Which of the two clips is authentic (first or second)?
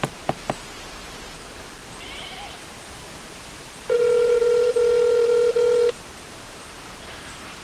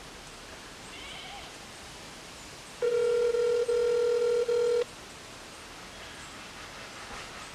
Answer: second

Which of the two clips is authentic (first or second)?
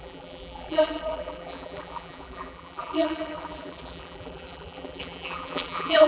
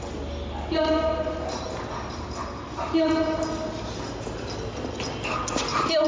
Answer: second